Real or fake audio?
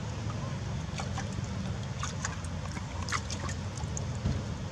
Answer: real